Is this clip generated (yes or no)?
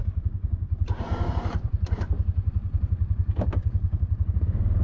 yes